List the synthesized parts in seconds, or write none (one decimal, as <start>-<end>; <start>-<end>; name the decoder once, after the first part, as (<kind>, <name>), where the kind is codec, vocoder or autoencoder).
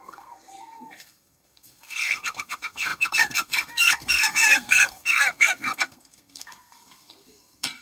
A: 0.0-7.8 (codec, SNAC)